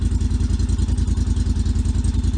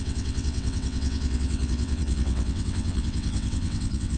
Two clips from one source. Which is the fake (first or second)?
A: second